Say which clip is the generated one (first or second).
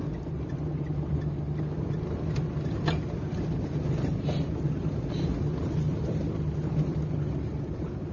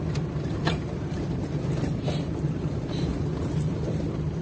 second